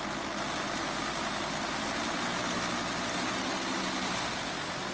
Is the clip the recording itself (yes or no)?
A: yes